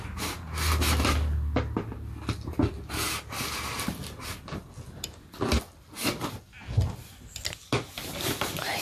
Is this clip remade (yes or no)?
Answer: no